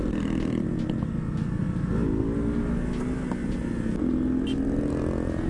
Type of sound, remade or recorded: recorded